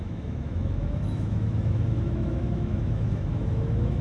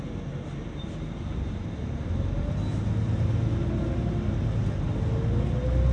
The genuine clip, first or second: second